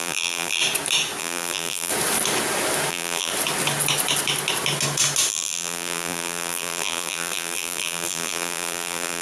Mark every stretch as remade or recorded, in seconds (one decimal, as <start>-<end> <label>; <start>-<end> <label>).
0.0-0.6 remade; 0.6-1.2 recorded; 1.2-1.9 remade; 1.9-2.9 recorded; 2.9-3.3 remade; 3.3-5.3 recorded; 5.3-9.2 remade